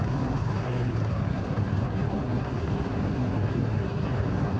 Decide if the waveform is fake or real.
fake